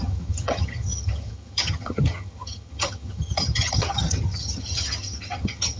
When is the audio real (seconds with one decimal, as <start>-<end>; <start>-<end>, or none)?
none